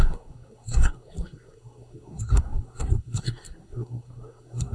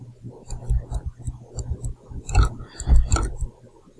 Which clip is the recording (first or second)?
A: second